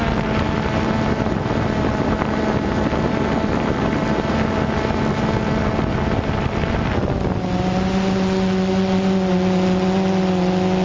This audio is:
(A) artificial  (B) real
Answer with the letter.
B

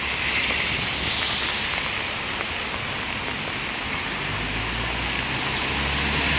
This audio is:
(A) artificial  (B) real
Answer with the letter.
B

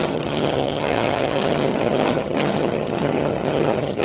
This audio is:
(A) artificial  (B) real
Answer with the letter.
A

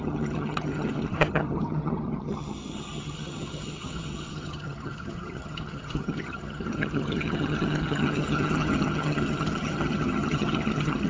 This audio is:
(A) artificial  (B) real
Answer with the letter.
A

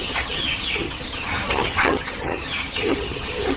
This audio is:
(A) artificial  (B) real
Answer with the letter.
A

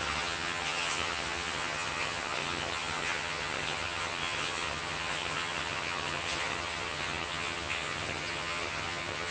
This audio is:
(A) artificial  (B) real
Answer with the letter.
A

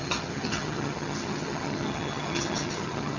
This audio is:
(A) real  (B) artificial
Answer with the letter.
B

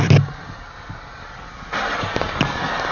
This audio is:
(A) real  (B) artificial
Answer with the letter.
A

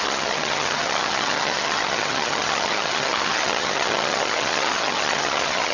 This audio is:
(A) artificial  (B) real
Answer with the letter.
A